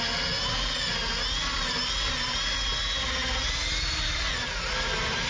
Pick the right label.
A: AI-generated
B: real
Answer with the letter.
B